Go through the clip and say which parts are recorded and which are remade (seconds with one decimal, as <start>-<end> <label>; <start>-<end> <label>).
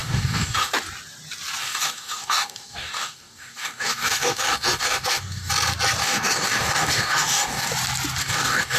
0.0-0.7 remade; 0.7-1.6 recorded; 1.6-5.5 remade; 5.5-6.0 recorded; 6.0-7.7 remade; 7.7-8.2 recorded; 8.2-8.8 remade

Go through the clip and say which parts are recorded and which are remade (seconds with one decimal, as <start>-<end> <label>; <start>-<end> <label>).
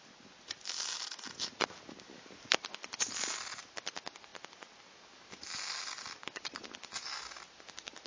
0.0-8.1 recorded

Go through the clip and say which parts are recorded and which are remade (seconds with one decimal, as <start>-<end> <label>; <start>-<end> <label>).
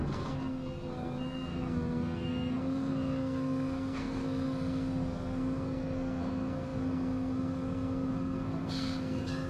0.0-9.5 remade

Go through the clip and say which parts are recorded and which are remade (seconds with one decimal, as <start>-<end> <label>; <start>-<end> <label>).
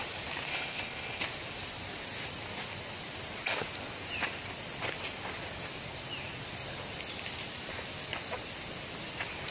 0.0-0.5 recorded; 0.5-1.2 remade; 1.2-9.5 recorded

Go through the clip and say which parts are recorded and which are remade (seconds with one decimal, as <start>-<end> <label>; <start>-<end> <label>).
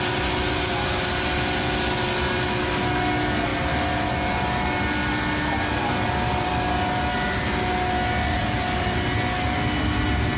0.0-10.4 recorded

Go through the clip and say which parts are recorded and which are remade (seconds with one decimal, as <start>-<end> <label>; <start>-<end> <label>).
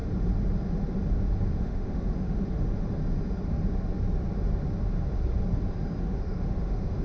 0.0-1.6 recorded; 1.6-3.0 remade; 3.0-6.0 recorded; 6.0-7.0 remade